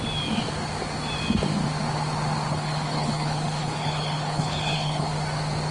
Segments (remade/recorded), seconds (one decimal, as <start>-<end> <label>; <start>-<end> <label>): 0.0-2.5 recorded; 2.5-5.1 remade; 5.1-5.7 recorded

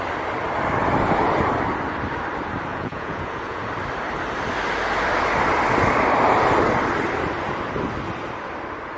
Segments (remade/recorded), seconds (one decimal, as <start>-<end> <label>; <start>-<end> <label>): 0.0-2.7 recorded; 2.7-3.6 remade; 3.6-9.0 recorded

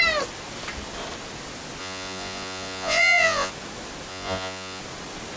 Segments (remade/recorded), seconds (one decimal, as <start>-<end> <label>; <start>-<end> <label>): 0.0-1.8 recorded; 1.8-3.5 remade; 3.5-4.1 recorded; 4.1-4.8 remade; 4.8-5.4 recorded

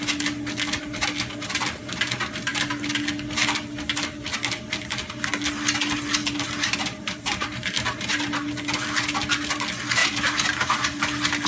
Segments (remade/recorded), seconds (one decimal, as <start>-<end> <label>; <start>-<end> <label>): 0.0-6.2 recorded; 6.2-8.2 remade; 8.2-10.0 recorded; 10.0-11.0 remade; 11.0-11.5 recorded

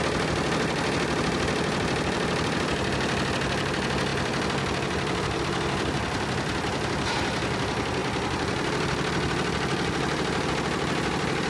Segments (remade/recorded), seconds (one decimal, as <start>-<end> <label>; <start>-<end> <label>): 0.0-11.5 remade